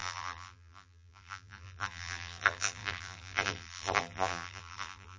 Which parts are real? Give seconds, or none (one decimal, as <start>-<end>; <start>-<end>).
none